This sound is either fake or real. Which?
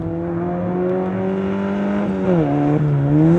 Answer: real